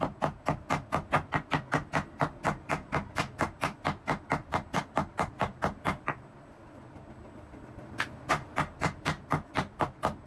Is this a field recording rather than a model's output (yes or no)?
yes